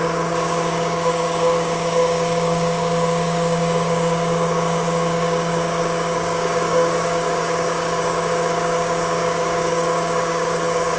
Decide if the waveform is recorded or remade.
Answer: remade